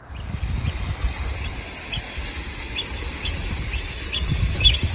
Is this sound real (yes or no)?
yes